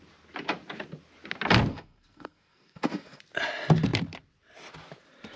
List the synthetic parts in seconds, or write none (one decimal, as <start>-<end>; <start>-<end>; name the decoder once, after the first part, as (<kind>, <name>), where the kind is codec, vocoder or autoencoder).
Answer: 1.7-3.2 (codec, SNAC)